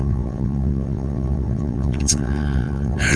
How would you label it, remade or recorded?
remade